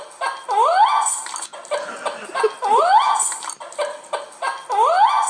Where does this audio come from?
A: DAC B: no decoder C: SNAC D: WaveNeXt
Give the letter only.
B